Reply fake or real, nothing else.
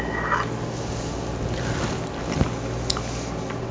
real